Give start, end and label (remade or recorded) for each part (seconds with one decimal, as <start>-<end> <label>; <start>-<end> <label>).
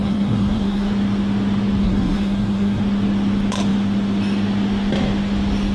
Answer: 0.0-0.9 remade; 0.9-1.8 recorded; 1.8-2.8 remade; 2.8-5.7 recorded